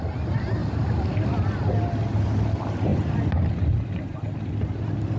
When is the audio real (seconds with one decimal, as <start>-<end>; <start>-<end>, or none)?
0.0-5.2